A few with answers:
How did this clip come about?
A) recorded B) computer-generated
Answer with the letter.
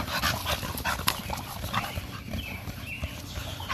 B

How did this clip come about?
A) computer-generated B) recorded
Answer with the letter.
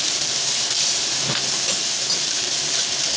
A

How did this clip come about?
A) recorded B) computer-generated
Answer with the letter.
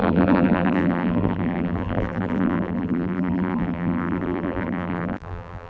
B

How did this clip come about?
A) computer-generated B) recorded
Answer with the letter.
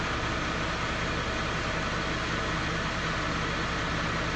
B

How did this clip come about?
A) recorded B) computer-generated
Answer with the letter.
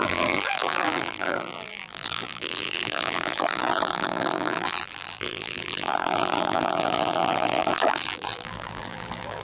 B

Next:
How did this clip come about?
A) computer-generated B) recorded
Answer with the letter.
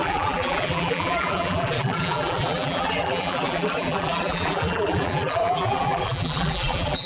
A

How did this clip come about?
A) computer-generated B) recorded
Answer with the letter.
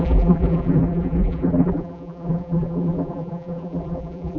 A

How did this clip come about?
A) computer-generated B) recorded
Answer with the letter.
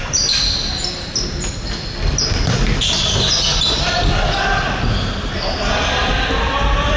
B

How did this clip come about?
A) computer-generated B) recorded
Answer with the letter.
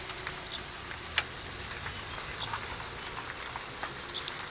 B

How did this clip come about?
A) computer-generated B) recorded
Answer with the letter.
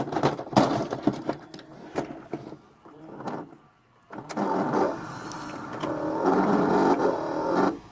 A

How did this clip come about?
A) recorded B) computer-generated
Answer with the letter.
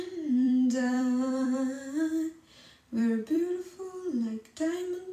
B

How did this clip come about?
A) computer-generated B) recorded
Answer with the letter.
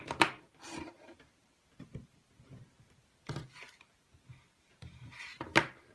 B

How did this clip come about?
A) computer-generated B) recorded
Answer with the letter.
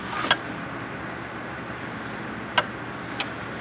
B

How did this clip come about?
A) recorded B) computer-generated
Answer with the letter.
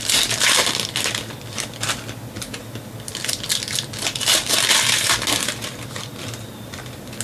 A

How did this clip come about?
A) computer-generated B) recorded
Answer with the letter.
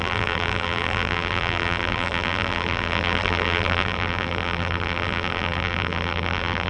A